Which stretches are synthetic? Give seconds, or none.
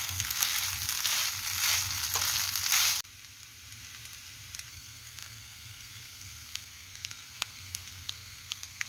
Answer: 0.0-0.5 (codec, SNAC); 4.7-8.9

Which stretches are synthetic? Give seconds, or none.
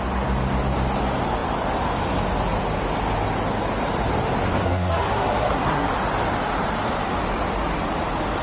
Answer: 4.6-5.9 (codec, SNAC)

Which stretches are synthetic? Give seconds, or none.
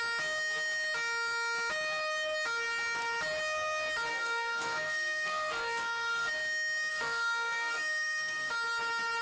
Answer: 4.1-6.3 (codec, SNAC); 6.9-8.5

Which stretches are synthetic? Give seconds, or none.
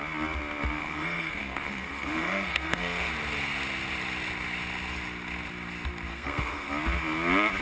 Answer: 0.8-3.1 (codec, SNAC); 6.1-6.7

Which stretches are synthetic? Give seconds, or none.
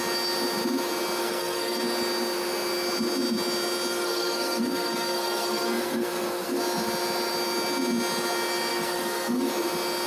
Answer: 1.2-1.8 (codec, SNAC); 3.9-6.6; 8.7-9.5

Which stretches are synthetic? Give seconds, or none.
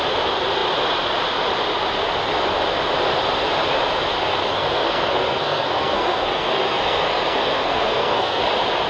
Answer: 4.5-8.4 (codec, SNAC)